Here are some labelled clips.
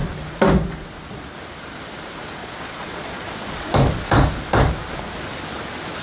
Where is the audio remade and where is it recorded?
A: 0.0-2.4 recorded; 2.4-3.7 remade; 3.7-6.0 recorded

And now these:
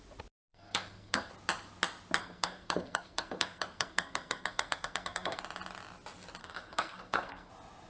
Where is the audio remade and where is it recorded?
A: 0.0-0.5 recorded; 0.5-1.3 remade; 1.3-2.2 recorded; 2.2-5.4 remade; 5.4-6.4 recorded; 6.4-7.5 remade; 7.5-7.9 recorded

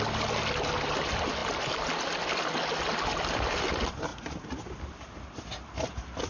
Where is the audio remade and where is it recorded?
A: 0.0-6.3 recorded

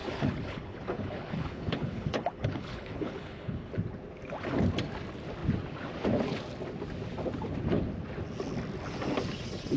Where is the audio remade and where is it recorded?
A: 0.0-3.7 remade; 3.7-9.8 recorded

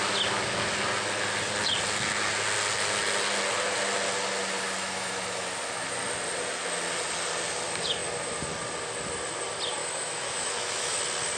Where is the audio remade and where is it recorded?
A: 0.0-4.8 recorded; 4.8-5.4 remade; 5.4-9.8 recorded; 9.8-11.0 remade; 11.0-11.4 recorded